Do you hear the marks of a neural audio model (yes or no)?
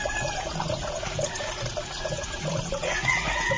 yes